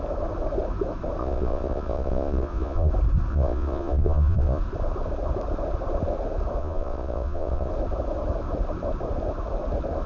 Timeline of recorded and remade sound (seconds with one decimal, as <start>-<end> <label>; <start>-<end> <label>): 0.0-1.2 recorded; 1.2-2.9 remade; 2.9-3.3 recorded; 3.3-4.6 remade; 4.6-6.6 recorded; 6.6-7.7 remade; 7.7-10.1 recorded